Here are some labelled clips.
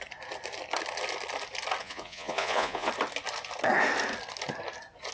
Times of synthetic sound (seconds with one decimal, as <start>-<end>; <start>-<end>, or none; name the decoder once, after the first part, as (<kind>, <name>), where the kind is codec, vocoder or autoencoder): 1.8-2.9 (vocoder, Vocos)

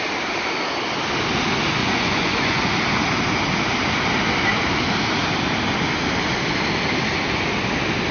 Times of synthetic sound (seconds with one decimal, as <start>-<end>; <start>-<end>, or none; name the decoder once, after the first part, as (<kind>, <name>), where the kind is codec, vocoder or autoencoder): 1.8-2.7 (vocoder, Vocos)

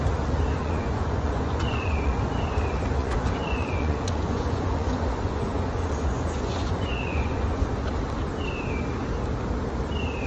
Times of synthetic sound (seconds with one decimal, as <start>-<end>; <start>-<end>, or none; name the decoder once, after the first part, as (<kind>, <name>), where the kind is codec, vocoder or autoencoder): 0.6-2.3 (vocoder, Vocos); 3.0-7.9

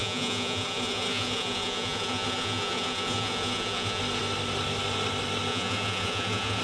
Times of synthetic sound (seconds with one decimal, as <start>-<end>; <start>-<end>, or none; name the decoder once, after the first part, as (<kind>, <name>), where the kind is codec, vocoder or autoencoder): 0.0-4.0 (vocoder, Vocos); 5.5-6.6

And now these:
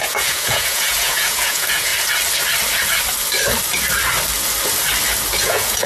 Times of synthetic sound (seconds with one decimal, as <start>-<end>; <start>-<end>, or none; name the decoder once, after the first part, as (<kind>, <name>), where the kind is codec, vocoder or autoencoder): 0.0-1.9 (vocoder, Vocos); 5.4-5.9